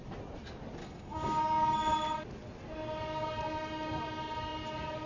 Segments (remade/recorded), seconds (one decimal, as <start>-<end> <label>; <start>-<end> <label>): 0.0-0.8 recorded; 0.8-1.4 remade; 1.4-5.1 recorded